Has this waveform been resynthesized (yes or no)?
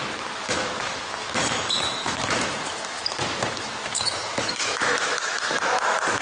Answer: yes